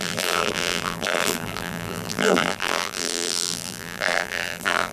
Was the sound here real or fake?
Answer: fake